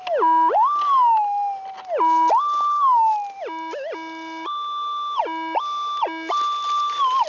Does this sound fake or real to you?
real